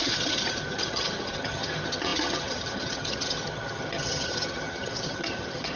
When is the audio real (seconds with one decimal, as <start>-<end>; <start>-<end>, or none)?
none